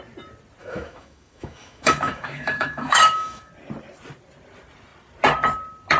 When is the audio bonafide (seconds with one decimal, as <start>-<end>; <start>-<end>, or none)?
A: 0.0-0.6; 3.5-6.0